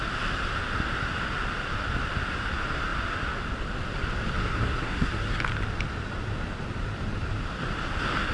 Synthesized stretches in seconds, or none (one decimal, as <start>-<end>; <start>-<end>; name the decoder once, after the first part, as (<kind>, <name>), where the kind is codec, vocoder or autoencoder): 4.4-5.4 (codec, SNAC)